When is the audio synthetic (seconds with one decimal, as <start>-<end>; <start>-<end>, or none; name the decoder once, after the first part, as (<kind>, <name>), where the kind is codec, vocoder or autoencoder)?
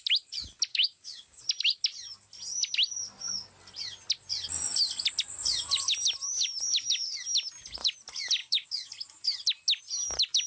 0.7-1.4 (codec, DAC); 8.4-8.9